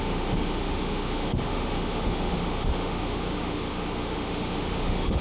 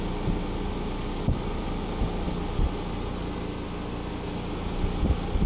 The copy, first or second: first